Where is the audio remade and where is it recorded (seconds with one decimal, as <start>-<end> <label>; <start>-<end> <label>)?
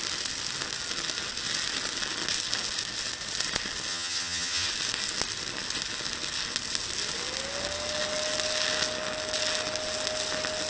0.0-3.9 recorded; 3.9-4.7 remade; 4.7-10.7 recorded